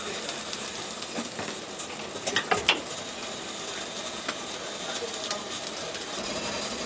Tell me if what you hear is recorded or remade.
recorded